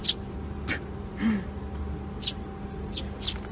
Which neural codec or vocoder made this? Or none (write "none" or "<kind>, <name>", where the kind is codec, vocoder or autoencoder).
none